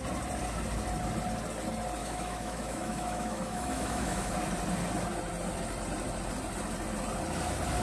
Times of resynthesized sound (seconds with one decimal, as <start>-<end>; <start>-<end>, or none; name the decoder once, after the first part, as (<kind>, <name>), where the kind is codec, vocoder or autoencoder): 2.0-4.3 (autoencoder, DAC-VAE)